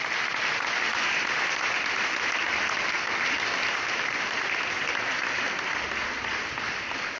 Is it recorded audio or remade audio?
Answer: recorded